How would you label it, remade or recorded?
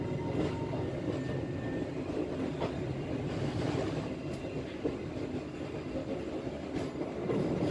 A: recorded